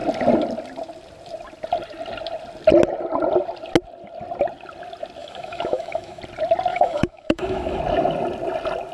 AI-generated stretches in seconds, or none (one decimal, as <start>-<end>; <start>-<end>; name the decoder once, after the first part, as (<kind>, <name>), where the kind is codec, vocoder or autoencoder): 5.2-6.2 (autoencoder, DAC-VAE); 6.7-7.8